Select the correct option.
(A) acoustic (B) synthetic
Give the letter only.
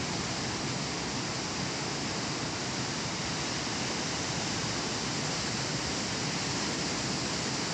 A